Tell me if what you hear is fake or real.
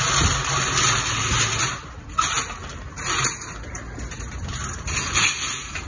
real